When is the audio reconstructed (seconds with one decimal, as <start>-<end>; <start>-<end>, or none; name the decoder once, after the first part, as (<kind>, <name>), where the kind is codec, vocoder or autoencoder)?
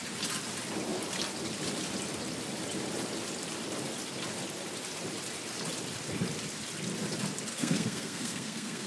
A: 7.5-8.9 (codec, SNAC)